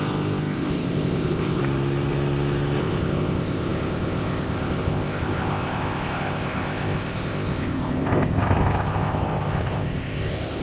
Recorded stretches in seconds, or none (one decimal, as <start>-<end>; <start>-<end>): 1.6-2.8